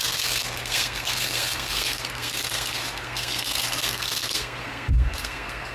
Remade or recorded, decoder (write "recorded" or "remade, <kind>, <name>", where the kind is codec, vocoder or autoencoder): remade, codec, SNAC